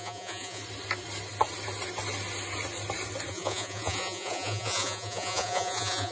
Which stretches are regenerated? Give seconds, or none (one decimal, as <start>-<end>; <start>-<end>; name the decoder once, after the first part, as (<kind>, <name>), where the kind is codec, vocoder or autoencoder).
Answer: 0.0-0.6 (vocoder, Vocos); 3.3-6.1